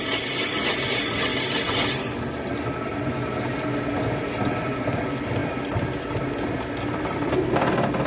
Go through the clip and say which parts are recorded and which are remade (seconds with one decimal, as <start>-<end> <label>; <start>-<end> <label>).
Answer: 0.0-8.1 recorded